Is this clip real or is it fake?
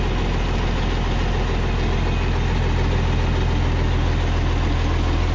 real